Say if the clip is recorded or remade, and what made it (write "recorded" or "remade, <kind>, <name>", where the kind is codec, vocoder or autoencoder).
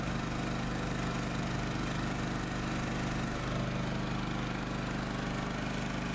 recorded